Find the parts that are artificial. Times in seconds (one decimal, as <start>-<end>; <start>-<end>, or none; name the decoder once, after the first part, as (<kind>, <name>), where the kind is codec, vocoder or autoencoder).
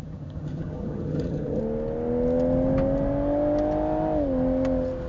0.0-1.6 (vocoder, HiFi-GAN)